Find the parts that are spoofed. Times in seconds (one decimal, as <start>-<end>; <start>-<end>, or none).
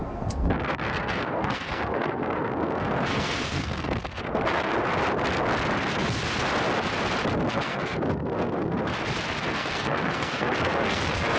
0.0-4.7; 7.5-8.9; 9.5-11.4